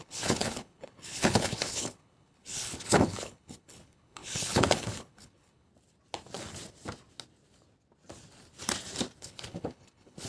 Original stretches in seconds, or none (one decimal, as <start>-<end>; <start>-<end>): 5.7-9.2